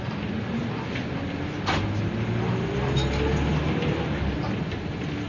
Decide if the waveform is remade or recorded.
recorded